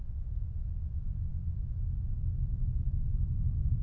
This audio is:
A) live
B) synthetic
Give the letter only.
B